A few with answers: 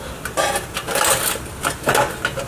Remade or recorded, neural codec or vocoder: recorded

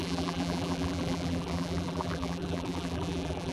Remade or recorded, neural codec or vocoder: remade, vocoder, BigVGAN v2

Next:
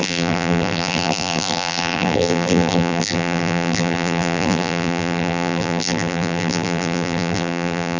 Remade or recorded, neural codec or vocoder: remade, vocoder, BigVGAN v2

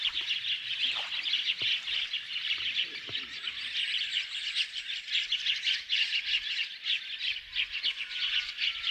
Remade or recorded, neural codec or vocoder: recorded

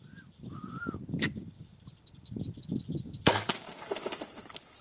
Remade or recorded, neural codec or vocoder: remade, vocoder, BigVGAN v2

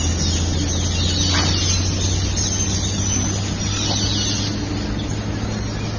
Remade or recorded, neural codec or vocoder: recorded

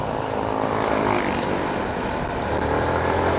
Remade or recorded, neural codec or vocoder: recorded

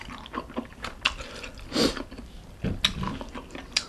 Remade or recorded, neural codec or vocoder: recorded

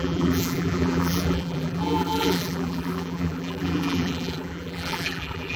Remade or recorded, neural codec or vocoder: remade, vocoder, BigVGAN v2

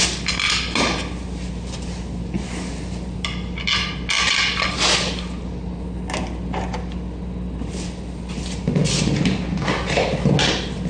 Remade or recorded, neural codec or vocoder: recorded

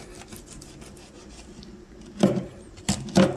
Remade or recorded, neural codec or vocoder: recorded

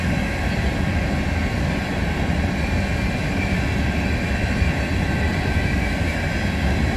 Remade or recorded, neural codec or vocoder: recorded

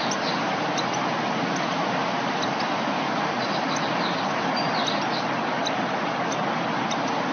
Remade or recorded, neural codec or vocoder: remade, vocoder, BigVGAN v2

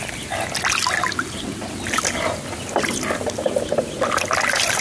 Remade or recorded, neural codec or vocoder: recorded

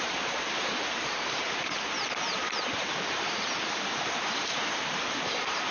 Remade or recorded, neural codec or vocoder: remade, vocoder, BigVGAN v2